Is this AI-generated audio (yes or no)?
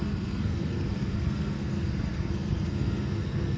yes